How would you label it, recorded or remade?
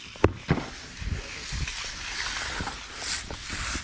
recorded